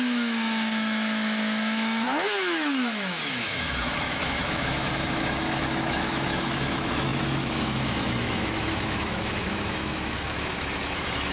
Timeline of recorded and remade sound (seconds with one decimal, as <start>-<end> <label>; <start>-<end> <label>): 0.0-11.3 remade